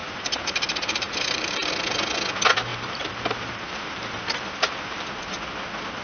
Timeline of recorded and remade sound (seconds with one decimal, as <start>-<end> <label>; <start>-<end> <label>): 0.0-1.7 remade; 1.7-2.7 recorded; 2.7-5.1 remade; 5.1-6.0 recorded

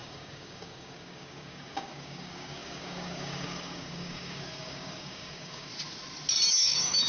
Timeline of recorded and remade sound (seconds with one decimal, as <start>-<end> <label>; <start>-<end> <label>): 0.0-5.7 remade; 5.7-6.5 recorded; 6.5-7.1 remade

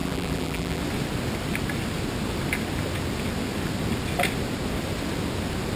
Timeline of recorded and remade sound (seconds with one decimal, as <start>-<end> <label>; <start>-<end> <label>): 0.0-0.8 remade; 0.8-5.8 recorded

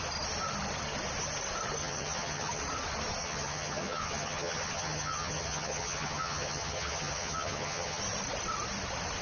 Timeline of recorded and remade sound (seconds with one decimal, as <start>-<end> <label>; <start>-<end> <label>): 0.0-1.8 recorded; 1.8-2.6 remade; 2.6-3.2 recorded; 3.2-8.0 remade; 8.0-9.2 recorded

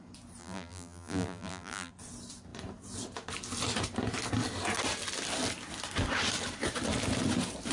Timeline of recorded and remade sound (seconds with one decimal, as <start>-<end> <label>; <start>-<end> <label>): 0.0-0.4 recorded; 0.4-1.9 remade; 1.9-7.7 recorded

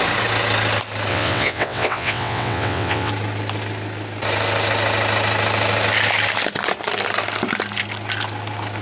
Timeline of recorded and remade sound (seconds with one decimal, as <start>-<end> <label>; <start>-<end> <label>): 0.0-1.1 recorded; 1.1-3.1 remade; 3.1-8.8 recorded